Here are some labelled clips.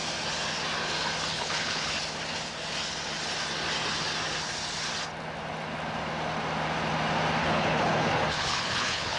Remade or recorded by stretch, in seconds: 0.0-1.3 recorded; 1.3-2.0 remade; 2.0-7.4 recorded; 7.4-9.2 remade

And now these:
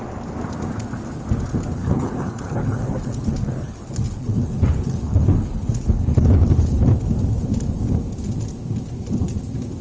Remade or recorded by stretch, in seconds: 0.0-1.8 recorded; 1.8-6.9 remade; 6.9-9.8 recorded

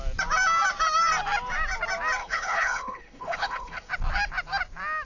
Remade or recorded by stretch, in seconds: 0.0-2.2 recorded; 2.2-3.9 remade; 3.9-5.0 recorded

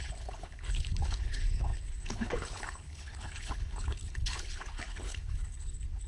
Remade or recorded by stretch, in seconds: 0.0-6.1 remade

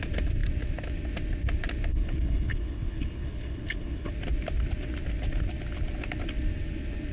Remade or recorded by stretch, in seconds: 0.0-1.9 recorded; 1.9-4.1 remade; 4.1-7.1 recorded

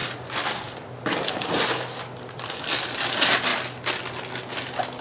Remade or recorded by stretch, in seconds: 0.0-5.0 recorded

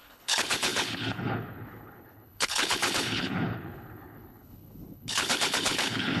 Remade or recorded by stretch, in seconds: 0.0-6.2 remade